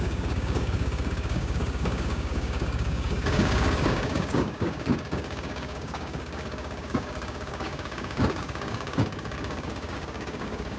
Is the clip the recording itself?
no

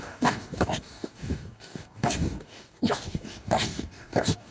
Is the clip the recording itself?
no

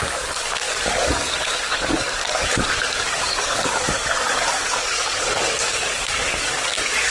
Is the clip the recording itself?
no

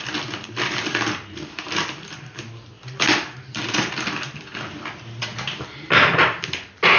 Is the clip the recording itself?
yes